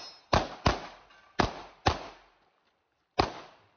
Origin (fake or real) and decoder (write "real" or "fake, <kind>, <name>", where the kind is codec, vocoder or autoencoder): real